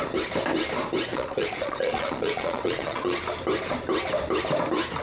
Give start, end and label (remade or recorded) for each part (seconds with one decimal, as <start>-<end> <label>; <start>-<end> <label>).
0.0-1.1 recorded; 1.1-3.2 remade; 3.2-5.0 recorded